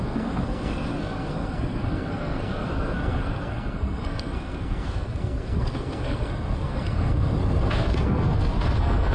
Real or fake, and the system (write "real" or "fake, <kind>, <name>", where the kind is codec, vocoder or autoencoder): fake, codec, SNAC